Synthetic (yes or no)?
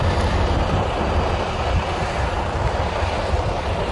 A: no